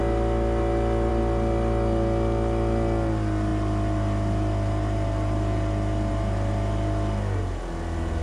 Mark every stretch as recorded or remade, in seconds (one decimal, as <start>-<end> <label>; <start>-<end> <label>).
0.0-8.2 recorded